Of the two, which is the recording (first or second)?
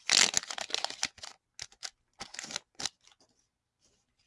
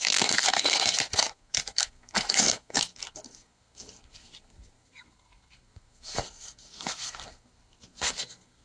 first